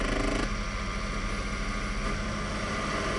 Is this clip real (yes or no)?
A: yes